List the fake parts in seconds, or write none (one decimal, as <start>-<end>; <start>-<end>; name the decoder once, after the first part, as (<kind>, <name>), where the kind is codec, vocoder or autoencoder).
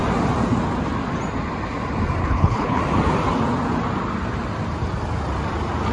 2.2-2.8 (codec, HILCodec)